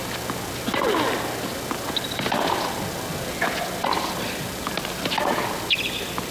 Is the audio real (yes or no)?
yes